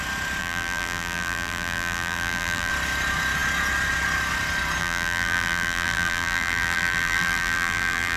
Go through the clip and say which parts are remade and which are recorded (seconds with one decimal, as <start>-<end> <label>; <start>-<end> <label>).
0.0-0.4 recorded; 0.4-2.7 remade; 2.7-4.8 recorded; 4.8-8.2 remade

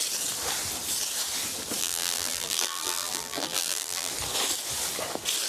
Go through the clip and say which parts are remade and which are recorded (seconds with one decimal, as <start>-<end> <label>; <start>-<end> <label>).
0.0-1.8 recorded; 1.8-4.1 remade; 4.1-5.5 recorded

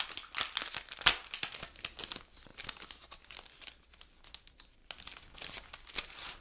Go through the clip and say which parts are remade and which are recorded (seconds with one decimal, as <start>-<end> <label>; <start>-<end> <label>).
0.0-6.4 recorded